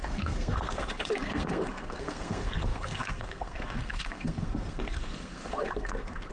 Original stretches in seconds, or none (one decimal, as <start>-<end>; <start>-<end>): none

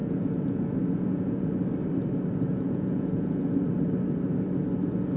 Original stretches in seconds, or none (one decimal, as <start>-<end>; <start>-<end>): 1.5-2.5; 3.5-5.2

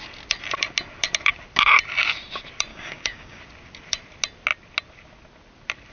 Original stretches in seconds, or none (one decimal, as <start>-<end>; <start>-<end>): 0.0-2.7; 3.4-5.9